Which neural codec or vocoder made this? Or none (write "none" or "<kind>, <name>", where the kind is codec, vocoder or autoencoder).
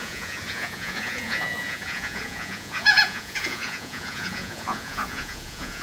vocoder, Vocos